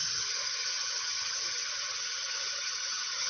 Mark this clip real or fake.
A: fake